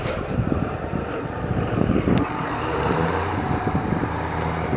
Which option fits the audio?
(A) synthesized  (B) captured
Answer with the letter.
A